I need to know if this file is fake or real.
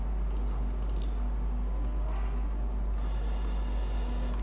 real